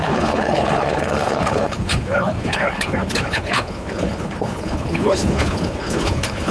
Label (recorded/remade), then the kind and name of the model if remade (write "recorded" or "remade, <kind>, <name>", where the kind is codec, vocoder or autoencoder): remade, codec, HILCodec